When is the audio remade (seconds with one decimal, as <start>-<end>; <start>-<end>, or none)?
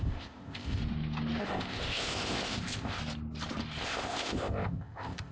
0.0-0.8; 1.4-3.0; 3.8-5.3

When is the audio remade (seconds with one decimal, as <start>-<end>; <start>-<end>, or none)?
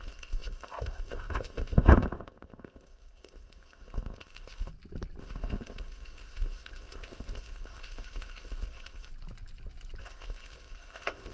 0.0-4.7; 5.2-9.1; 10.0-11.3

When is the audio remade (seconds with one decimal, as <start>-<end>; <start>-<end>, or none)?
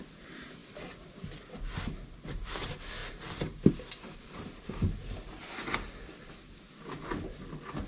none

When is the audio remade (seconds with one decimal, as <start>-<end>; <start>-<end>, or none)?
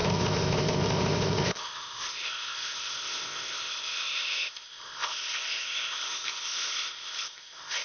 0.0-7.8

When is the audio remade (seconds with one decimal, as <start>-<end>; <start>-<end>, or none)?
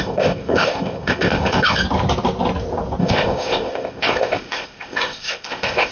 0.0-1.8; 3.0-5.9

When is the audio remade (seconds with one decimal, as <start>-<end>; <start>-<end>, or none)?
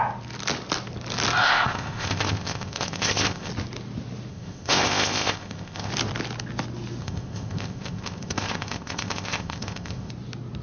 1.4-3.5; 4.3-5.9; 7.0-10.1